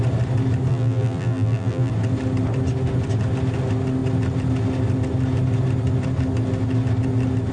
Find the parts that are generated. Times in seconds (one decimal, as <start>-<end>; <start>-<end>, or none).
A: 0.7-1.9